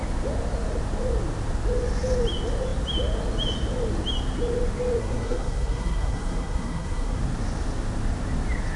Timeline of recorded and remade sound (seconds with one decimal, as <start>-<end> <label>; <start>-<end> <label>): 0.0-5.0 recorded; 5.0-7.2 remade; 7.2-8.8 recorded